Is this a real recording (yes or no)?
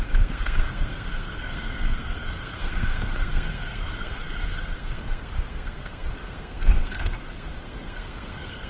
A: no